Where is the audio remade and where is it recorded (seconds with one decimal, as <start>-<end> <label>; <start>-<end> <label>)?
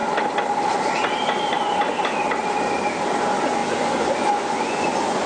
0.0-3.6 recorded; 3.6-5.3 remade